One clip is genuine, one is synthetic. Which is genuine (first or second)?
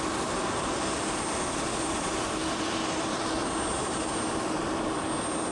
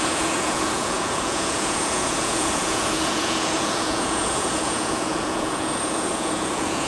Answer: first